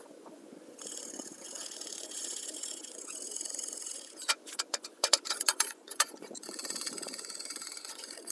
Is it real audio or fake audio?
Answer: fake